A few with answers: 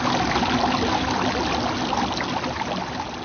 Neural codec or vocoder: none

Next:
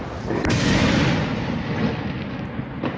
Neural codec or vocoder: none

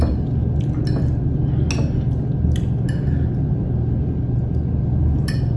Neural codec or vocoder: none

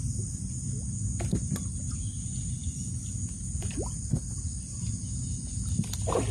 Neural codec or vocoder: none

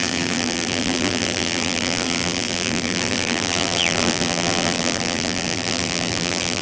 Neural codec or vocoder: vocoder, BigVGAN v2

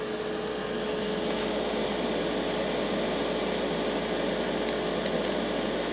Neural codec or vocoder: none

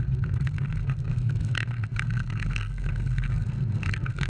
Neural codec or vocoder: codec, SNAC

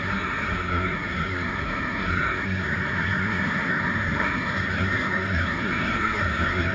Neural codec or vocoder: codec, SNAC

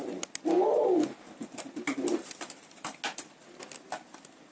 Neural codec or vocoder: none